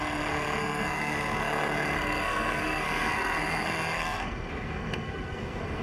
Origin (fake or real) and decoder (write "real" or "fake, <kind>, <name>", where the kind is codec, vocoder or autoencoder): fake, codec, SNAC